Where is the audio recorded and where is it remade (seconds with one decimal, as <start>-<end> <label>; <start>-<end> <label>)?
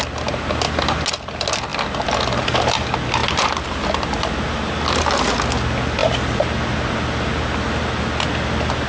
0.0-8.9 recorded